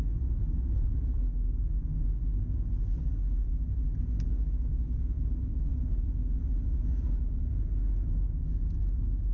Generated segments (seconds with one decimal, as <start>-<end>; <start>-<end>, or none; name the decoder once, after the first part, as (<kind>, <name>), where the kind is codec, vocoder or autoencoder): none